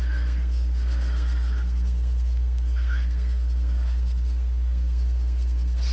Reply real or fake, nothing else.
fake